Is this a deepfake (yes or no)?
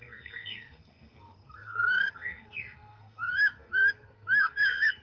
yes